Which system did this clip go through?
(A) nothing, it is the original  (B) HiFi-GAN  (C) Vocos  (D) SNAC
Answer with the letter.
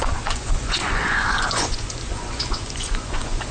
C